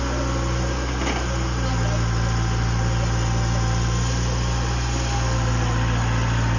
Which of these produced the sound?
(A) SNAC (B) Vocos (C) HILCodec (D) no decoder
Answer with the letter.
D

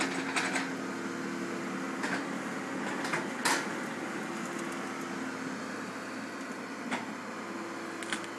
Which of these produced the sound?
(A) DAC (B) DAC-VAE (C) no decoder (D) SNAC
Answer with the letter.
C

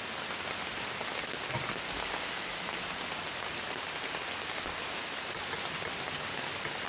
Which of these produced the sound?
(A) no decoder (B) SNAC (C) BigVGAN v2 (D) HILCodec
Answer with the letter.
A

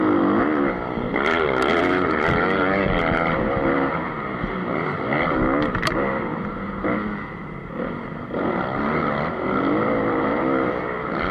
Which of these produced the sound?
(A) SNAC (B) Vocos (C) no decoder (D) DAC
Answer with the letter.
C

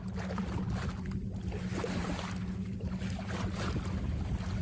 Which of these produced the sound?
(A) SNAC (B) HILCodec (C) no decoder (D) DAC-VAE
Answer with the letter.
C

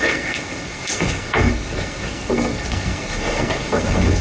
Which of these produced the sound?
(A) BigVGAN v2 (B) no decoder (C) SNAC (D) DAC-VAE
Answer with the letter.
C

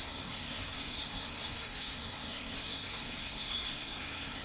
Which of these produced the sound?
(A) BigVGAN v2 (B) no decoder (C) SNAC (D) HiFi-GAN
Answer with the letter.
C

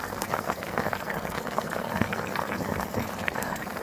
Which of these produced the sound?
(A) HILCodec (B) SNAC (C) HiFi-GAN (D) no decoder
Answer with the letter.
B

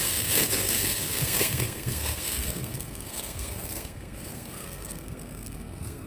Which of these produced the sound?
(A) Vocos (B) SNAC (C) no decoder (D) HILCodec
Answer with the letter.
B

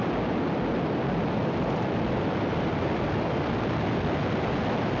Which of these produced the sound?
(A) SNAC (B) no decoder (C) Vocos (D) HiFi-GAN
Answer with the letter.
B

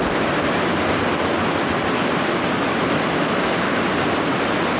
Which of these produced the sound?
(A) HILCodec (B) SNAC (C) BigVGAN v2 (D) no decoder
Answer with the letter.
D